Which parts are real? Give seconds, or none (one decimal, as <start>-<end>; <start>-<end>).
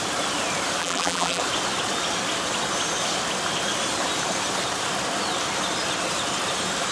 0.0-0.8; 1.4-6.9